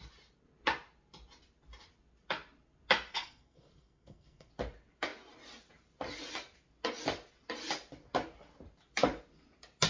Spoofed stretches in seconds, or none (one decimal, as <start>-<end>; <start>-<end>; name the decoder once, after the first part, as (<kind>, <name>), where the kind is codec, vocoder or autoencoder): 3.1-4.5 (codec, SNAC)